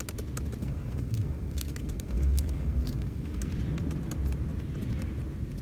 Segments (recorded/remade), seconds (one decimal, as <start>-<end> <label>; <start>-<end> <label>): 0.0-0.6 recorded; 0.6-3.5 remade; 3.5-5.6 recorded